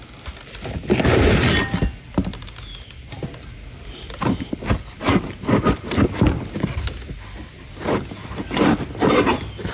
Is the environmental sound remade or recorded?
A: recorded